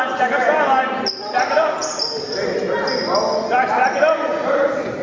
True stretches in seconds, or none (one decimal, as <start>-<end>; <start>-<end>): 0.0-4.3